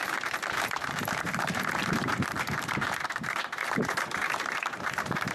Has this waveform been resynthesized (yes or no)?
yes